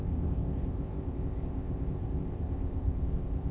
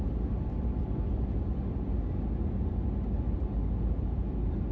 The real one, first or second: second